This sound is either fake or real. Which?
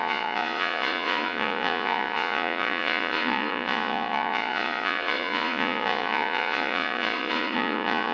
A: fake